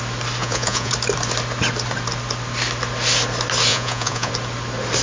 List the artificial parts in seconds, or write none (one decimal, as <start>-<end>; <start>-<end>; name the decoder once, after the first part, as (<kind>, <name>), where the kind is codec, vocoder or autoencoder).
0.4-0.9 (vocoder, Vocos); 3.7-4.3

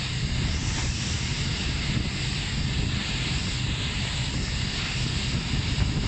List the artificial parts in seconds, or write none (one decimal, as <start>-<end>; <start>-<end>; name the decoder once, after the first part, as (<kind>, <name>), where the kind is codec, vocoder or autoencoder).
none

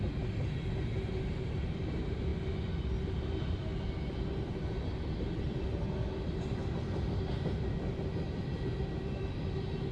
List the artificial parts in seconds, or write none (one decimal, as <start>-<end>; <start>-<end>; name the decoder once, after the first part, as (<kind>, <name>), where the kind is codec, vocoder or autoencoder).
none

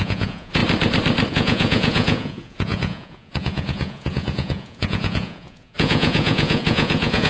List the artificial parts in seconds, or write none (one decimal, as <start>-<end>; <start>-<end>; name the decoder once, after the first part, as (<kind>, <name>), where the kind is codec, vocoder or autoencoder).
0.0-0.6 (vocoder, Vocos); 1.3-7.3